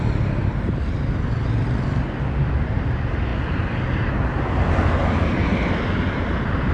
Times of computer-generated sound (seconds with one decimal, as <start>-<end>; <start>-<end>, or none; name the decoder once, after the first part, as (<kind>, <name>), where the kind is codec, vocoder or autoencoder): none